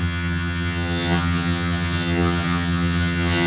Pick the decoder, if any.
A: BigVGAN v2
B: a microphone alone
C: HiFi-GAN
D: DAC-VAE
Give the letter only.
C